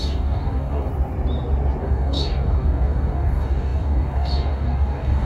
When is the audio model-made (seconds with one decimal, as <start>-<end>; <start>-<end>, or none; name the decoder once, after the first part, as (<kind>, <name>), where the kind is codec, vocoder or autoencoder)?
0.0-0.9 (codec, DAC); 1.8-5.3